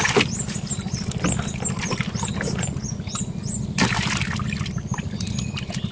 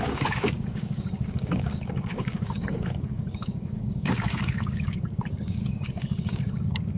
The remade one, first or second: second